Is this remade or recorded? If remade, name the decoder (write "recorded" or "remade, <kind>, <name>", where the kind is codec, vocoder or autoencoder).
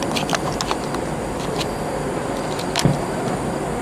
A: recorded